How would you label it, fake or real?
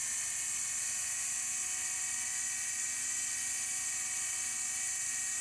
real